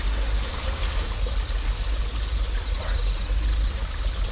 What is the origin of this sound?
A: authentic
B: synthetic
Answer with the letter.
A